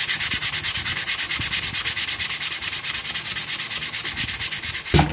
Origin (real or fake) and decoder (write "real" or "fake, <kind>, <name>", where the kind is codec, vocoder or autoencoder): real